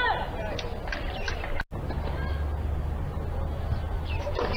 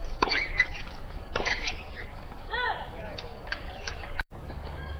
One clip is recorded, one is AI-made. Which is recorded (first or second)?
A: first